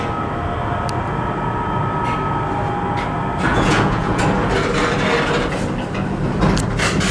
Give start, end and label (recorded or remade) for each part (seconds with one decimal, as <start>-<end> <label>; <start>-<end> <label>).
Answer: 0.0-3.5 recorded; 3.5-4.2 remade; 4.2-7.1 recorded